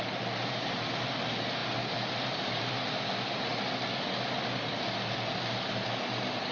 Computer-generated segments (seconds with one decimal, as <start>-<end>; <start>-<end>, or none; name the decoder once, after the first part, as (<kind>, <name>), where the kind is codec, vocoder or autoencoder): none